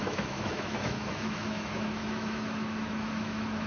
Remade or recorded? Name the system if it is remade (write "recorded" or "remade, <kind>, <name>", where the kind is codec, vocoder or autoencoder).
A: remade, autoencoder, DAC-VAE